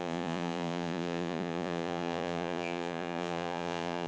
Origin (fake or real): fake